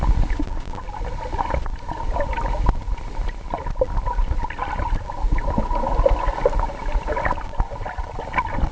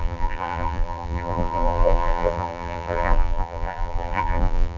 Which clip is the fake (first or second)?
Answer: second